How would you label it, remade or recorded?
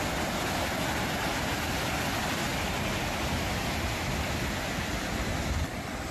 recorded